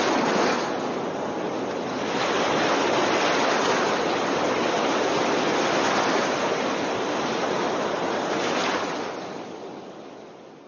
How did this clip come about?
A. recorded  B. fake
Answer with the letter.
A